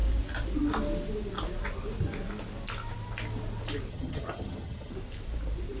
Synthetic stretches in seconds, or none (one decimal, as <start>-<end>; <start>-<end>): 3.9-4.9